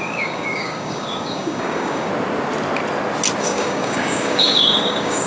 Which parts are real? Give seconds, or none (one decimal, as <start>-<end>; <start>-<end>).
2.1-3.4